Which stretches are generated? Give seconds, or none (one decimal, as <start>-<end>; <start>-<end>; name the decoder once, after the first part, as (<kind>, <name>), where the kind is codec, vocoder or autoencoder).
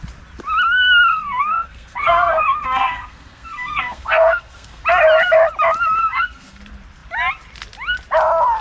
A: 1.1-4.8 (codec, SNAC); 6.0-6.6